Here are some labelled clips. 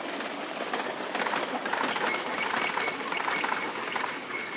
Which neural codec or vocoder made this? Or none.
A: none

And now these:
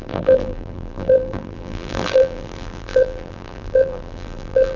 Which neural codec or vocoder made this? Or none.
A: vocoder, BigVGAN v2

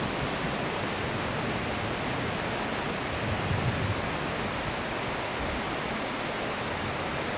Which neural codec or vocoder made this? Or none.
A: none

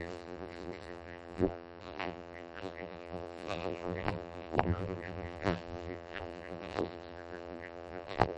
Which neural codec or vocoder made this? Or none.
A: vocoder, BigVGAN v2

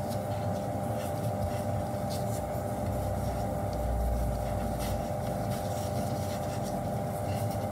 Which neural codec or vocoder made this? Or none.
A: none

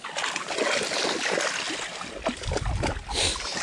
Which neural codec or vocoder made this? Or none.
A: none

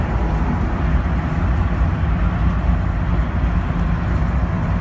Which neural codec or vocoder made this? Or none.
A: none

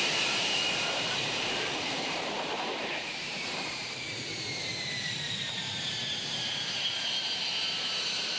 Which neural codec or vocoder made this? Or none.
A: vocoder, BigVGAN v2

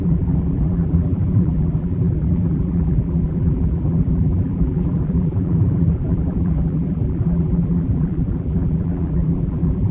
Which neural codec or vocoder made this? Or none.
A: vocoder, BigVGAN v2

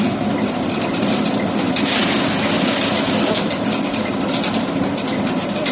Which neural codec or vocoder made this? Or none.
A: none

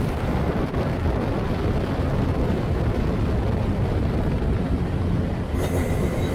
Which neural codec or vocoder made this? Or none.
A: vocoder, BigVGAN v2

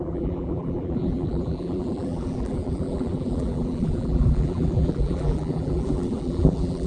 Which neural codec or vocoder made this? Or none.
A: vocoder, BigVGAN v2